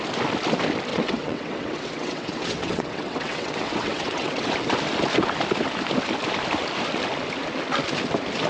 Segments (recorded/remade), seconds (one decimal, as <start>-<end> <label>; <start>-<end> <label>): 0.0-0.9 recorded; 0.9-4.5 remade; 4.5-8.5 recorded